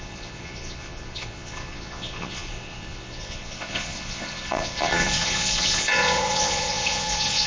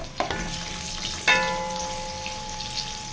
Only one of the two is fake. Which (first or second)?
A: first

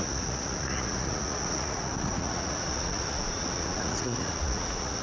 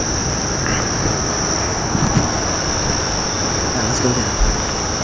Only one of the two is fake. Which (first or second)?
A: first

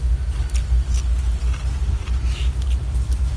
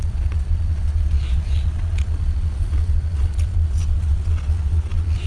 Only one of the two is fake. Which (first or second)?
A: second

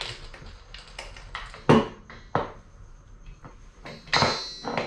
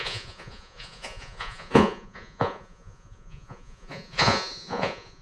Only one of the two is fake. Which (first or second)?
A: second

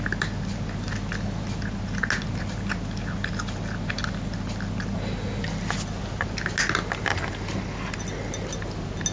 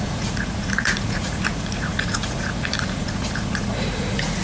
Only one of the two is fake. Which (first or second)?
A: second